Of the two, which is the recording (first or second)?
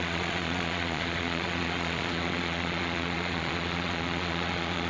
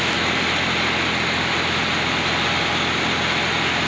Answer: second